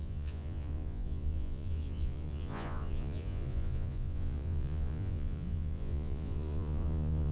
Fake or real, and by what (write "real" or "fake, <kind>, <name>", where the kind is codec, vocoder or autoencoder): fake, vocoder, Vocos